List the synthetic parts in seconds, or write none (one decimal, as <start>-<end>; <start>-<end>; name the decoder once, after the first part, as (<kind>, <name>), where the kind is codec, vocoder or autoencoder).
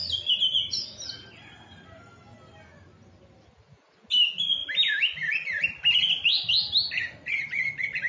none